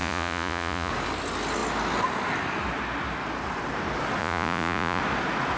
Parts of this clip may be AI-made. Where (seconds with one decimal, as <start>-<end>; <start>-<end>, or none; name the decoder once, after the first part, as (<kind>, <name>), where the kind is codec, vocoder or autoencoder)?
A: 0.0-0.9 (vocoder, Vocos); 4.2-5.0